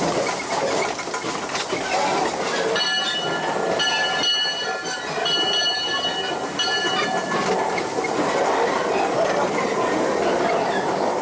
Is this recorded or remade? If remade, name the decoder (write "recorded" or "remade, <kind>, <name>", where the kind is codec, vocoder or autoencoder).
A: recorded